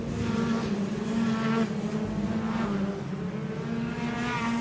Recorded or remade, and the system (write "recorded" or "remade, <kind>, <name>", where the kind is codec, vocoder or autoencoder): recorded